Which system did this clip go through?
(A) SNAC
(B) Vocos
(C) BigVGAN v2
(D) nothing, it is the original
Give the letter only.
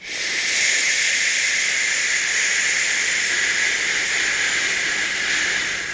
D